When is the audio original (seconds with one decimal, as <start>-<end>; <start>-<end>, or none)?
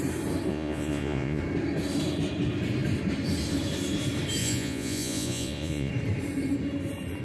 0.0-0.5; 1.4-4.4; 5.9-7.2